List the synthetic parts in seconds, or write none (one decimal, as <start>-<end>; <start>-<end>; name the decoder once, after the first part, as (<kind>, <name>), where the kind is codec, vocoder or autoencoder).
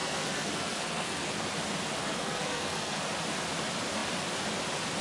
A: 0.0-1.3 (codec, SNAC); 2.0-3.0